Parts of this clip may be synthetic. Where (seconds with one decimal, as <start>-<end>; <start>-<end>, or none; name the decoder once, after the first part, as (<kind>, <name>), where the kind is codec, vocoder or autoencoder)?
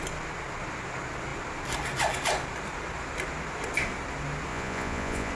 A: 4.5-5.3 (vocoder, Vocos)